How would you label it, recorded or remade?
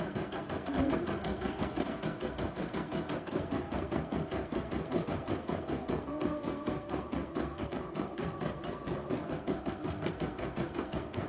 remade